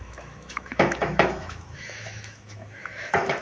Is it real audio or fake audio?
fake